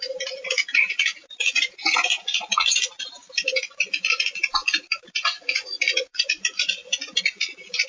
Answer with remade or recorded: remade